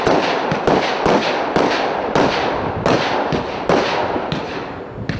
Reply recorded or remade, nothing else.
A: recorded